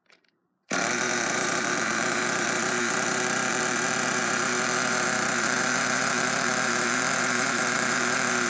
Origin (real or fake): fake